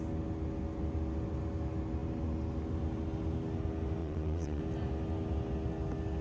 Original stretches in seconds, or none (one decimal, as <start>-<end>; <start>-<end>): 0.0-4.0; 4.6-6.2